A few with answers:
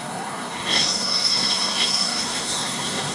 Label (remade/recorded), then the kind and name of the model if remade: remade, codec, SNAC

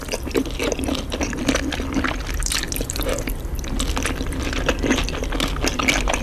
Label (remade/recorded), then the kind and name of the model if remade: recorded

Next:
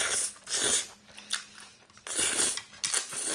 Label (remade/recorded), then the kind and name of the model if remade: recorded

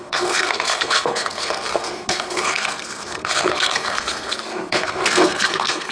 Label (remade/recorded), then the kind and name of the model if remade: remade, codec, SNAC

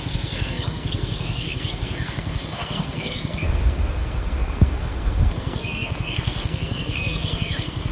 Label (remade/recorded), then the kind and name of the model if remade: remade, codec, SNAC